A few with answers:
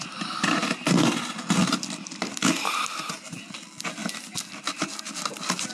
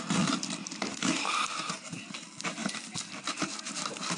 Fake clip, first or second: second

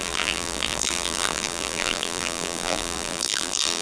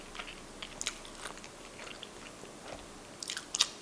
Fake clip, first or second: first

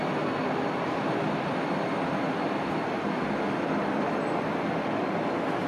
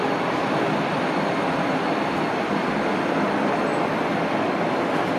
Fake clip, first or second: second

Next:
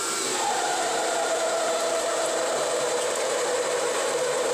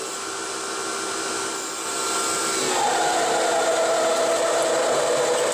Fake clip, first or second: first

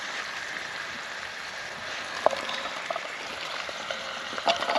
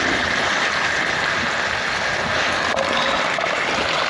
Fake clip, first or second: first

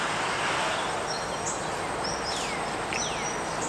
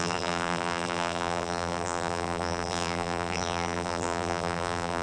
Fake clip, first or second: second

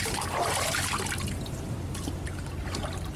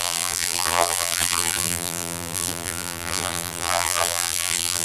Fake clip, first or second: second